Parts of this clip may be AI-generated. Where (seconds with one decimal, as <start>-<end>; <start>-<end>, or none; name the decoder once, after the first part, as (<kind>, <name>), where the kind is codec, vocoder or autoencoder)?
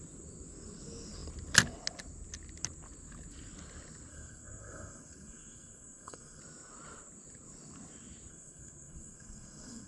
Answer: 4.1-6.4 (codec, SNAC); 8.3-9.9